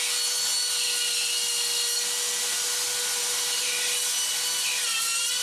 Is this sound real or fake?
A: real